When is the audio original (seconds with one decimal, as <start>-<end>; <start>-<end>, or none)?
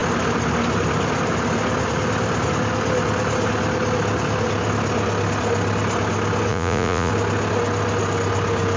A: 0.0-6.5; 7.1-8.8